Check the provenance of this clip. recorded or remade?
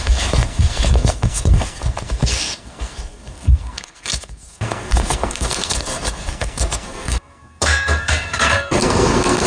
remade